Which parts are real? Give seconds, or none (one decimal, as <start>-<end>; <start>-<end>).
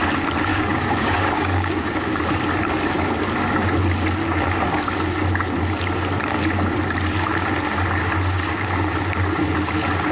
0.0-0.5; 2.2-10.1